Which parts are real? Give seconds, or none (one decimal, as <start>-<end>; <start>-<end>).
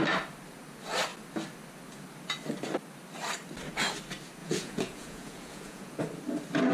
0.0-4.4; 6.0-6.7